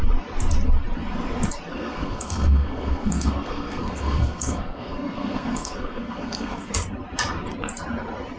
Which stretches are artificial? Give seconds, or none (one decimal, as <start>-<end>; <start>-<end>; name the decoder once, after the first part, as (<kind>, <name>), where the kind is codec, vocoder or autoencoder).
1.7-6.7 (codec, SNAC)